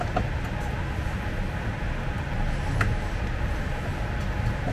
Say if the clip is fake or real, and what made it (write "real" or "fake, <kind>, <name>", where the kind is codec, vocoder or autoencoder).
real